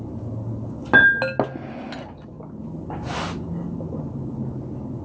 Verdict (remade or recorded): recorded